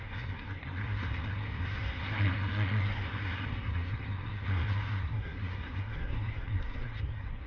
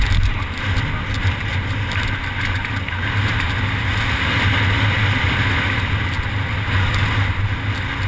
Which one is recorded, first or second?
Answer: second